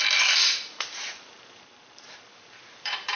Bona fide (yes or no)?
no